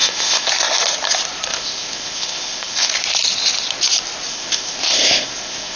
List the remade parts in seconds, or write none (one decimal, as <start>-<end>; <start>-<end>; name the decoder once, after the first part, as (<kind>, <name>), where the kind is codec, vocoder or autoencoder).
0.0-0.5 (codec, ZipCodec); 1.5-2.9; 4.3-5.8